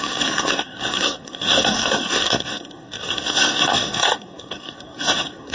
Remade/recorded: remade